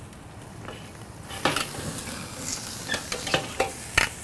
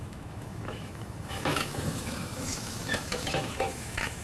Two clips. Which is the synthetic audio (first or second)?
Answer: second